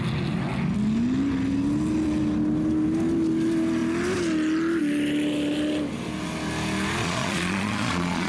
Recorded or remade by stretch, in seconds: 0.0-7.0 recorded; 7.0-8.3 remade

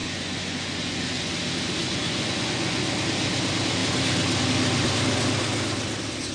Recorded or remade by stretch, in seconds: 0.0-1.3 remade; 1.3-1.8 recorded; 1.8-2.8 remade; 2.8-6.3 recorded